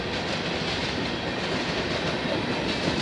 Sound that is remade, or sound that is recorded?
recorded